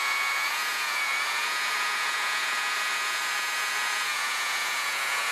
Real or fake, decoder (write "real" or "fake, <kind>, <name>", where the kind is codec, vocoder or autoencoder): fake, vocoder, Vocos